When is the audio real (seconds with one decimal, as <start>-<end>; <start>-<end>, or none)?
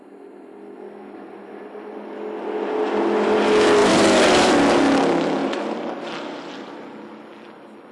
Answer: 0.0-3.8; 4.5-5.4; 7.2-7.9